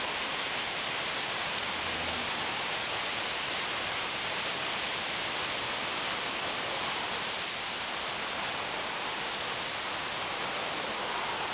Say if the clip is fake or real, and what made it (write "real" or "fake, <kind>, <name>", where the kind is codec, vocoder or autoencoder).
real